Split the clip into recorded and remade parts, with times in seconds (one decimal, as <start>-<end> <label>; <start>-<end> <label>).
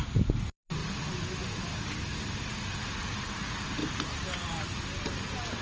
0.0-0.8 remade; 0.8-1.7 recorded; 1.7-2.1 remade; 2.1-3.4 recorded; 3.4-5.6 remade